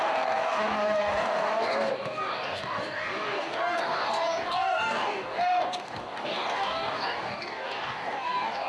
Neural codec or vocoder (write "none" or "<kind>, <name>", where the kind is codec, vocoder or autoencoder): codec, DAC